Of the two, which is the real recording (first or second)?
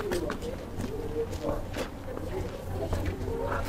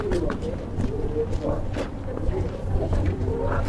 first